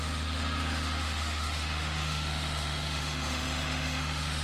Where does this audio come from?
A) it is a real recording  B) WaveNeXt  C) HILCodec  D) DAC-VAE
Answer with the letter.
D